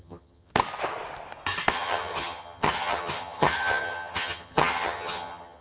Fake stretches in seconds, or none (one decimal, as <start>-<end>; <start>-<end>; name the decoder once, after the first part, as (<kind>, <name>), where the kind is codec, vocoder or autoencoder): 0.0-0.5 (vocoder, HiFi-GAN); 1.7-5.6

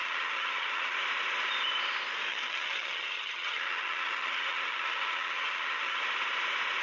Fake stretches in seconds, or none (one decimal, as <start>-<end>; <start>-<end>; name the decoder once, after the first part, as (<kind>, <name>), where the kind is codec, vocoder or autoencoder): 0.0-1.0 (vocoder, HiFi-GAN); 2.3-6.0

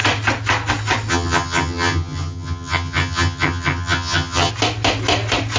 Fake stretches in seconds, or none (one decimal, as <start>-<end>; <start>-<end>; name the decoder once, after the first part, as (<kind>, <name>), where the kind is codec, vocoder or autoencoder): 1.1-4.5 (vocoder, HiFi-GAN)

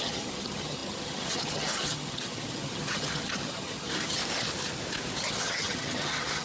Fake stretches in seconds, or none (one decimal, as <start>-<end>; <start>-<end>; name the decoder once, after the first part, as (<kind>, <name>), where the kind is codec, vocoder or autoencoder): 0.0-4.2 (vocoder, HiFi-GAN); 5.2-6.4

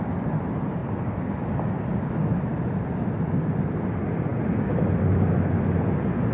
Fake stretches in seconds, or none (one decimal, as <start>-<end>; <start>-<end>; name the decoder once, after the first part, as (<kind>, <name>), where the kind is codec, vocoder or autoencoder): none

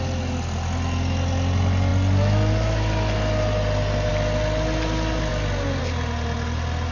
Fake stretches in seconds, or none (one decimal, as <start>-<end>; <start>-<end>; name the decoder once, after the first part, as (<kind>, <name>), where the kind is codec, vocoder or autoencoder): none

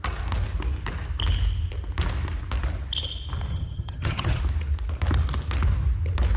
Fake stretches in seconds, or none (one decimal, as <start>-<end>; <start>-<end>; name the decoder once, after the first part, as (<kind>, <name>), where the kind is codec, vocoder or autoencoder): 3.5-4.4 (vocoder, HiFi-GAN)